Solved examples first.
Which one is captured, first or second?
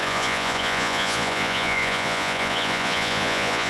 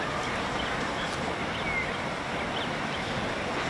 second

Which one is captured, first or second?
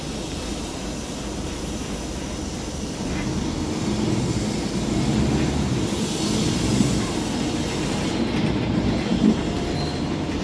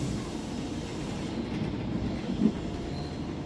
first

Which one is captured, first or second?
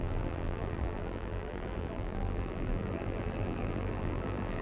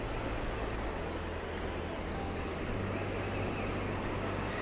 second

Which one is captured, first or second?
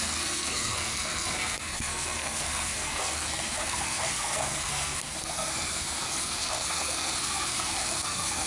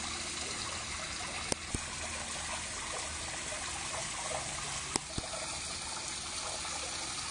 second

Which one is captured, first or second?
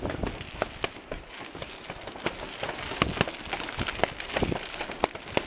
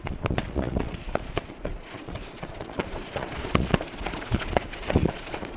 first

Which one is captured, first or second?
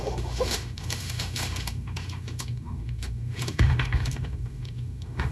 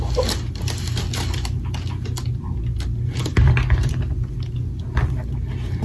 second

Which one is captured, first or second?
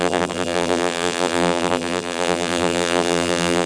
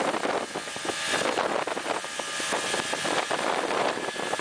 second